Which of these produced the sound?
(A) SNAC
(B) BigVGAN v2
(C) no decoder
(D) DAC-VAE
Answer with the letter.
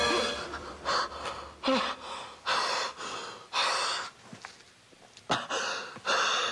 C